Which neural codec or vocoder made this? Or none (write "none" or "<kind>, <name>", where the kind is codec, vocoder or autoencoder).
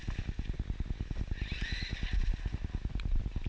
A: none